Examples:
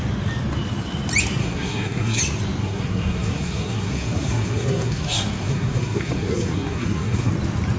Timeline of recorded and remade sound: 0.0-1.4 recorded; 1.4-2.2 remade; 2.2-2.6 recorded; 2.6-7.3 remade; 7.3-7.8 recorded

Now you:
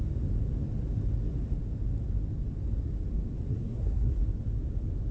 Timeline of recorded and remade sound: 0.0-3.5 recorded; 3.5-4.2 remade; 4.2-5.1 recorded

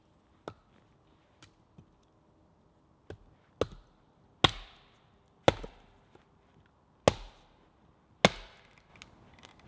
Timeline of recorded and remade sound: 0.0-9.7 recorded